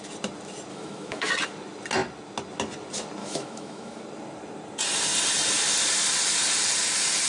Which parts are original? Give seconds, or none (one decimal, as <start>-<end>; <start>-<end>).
0.0-0.7; 1.3-3.2; 4.0-7.3